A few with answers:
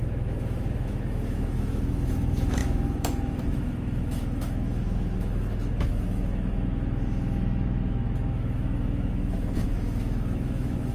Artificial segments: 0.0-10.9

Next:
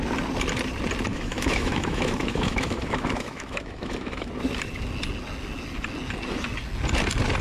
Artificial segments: 1.1-4.3

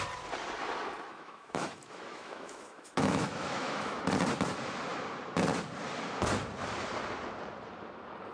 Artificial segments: 1.1-4.0

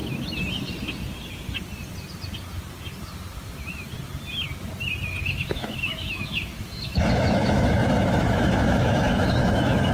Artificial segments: 5.2-9.9

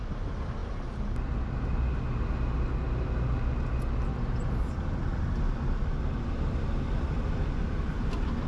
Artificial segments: none

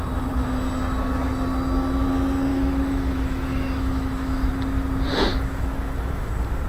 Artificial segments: 2.5-4.5; 5.3-6.3